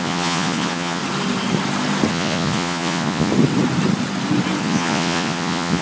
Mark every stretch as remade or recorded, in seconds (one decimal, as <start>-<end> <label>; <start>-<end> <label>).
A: 0.0-1.0 remade; 1.0-2.1 recorded; 2.1-3.3 remade; 3.3-4.6 recorded; 4.6-5.8 remade